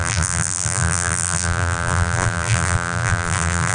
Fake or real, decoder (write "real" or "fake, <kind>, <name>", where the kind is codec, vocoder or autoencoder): fake, vocoder, BigVGAN v2